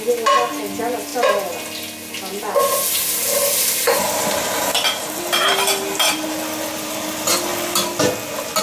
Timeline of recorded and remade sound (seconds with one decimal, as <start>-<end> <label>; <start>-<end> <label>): 0.0-8.6 recorded